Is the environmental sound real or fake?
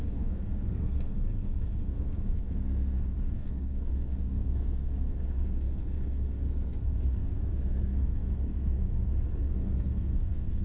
fake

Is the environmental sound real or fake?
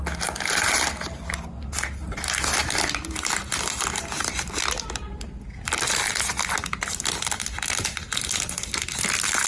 real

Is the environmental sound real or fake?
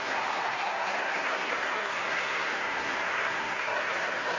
fake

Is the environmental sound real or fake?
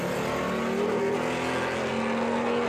real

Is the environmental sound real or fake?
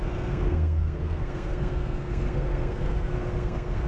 fake